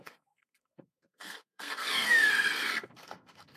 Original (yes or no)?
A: no